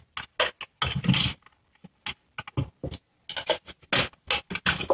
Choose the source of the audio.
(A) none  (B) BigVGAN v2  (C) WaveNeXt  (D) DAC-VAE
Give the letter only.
A